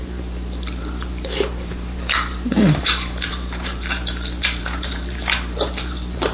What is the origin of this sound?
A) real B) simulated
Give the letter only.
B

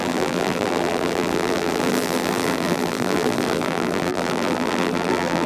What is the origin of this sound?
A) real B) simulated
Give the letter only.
B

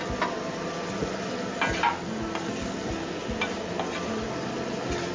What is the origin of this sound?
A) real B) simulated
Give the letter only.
A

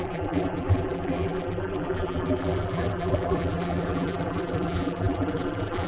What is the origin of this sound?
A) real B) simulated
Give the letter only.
B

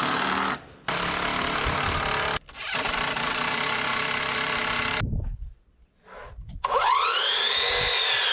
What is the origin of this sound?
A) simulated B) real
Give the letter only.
B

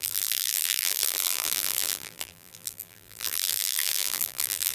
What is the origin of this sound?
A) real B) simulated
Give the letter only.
B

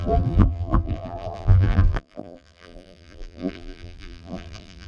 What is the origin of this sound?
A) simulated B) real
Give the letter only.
A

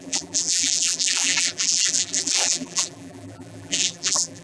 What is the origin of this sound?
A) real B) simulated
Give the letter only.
B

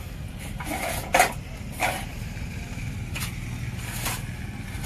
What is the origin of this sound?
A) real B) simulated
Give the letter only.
B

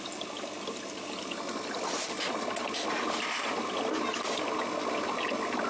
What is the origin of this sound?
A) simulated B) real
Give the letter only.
B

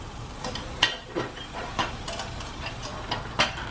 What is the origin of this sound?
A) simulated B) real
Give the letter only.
A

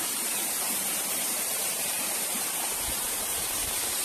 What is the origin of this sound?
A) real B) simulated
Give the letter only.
B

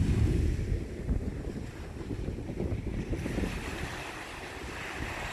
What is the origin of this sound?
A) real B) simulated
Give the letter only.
A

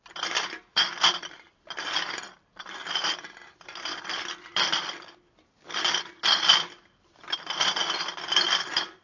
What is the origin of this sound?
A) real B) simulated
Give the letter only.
B